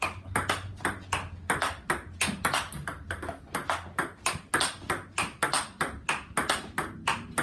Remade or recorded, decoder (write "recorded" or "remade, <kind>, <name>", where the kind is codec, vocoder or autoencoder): recorded